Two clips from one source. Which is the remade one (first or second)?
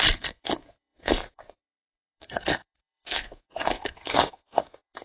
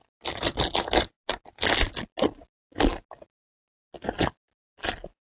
first